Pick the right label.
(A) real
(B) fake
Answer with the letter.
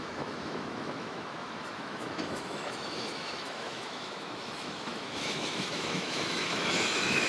B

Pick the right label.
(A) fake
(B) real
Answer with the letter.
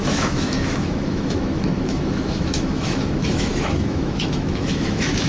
A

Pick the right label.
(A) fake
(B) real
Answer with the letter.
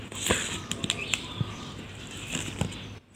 B